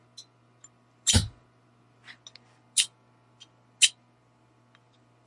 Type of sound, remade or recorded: recorded